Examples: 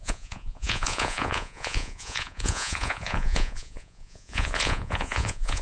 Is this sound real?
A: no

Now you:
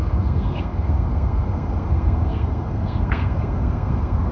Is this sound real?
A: no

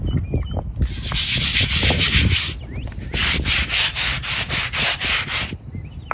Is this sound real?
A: yes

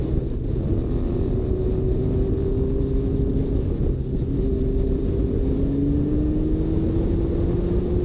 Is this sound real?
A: yes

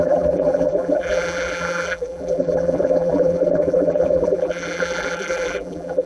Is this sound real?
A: no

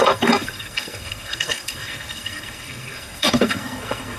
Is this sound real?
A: no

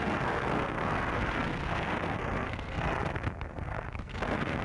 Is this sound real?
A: no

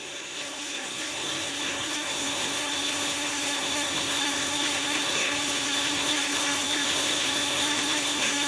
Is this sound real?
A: no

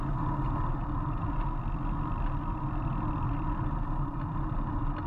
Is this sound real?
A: yes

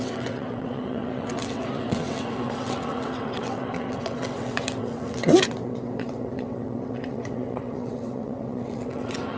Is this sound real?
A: no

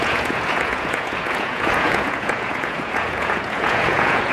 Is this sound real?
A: no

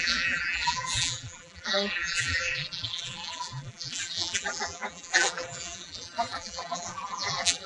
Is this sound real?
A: no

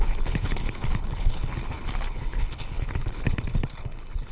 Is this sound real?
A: no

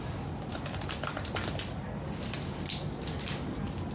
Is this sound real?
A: yes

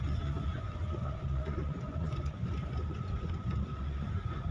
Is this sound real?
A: no